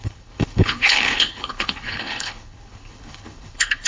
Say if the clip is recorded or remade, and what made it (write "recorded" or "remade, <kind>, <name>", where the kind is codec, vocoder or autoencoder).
remade, codec, HILCodec